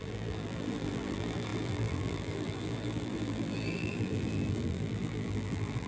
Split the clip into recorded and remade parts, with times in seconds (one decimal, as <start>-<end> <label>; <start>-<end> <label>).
0.0-5.9 remade